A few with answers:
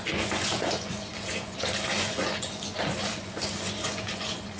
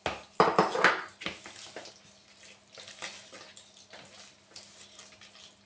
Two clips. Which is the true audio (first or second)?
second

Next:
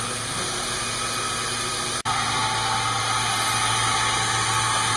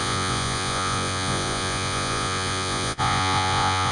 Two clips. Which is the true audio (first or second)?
first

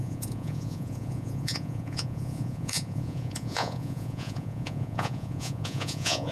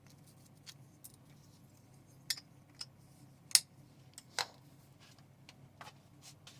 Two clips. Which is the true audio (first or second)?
second